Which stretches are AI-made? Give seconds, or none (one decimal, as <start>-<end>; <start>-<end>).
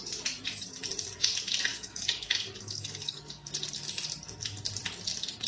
1.7-3.5